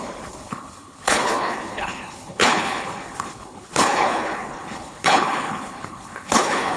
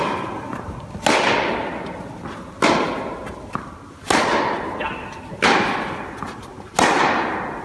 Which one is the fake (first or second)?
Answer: first